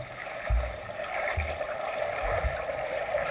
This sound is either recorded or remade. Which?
recorded